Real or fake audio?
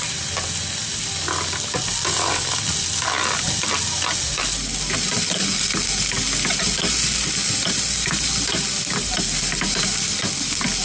real